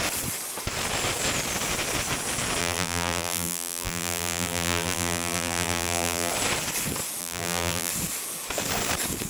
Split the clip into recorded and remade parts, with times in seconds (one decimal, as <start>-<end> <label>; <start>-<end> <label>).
0.0-2.6 recorded; 2.6-6.3 remade; 6.3-7.2 recorded; 7.2-7.9 remade; 7.9-9.3 recorded